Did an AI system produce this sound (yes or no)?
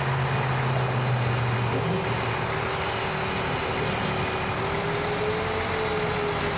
no